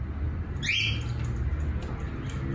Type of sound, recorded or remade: recorded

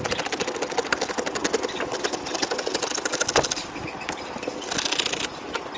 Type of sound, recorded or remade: recorded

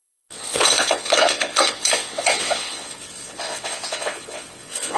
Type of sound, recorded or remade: remade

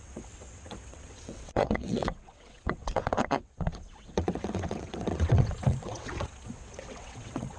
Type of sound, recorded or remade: remade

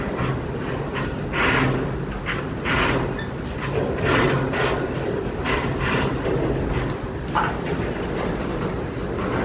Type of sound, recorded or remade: recorded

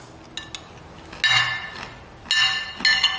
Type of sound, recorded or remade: recorded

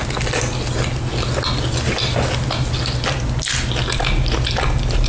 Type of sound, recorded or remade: recorded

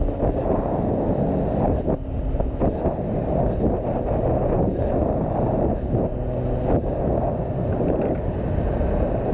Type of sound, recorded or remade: recorded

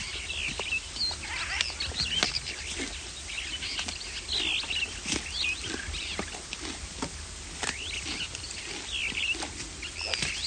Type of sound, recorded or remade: recorded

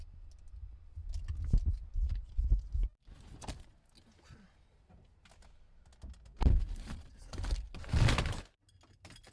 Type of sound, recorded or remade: recorded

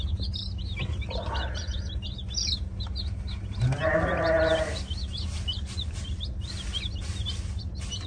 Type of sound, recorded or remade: recorded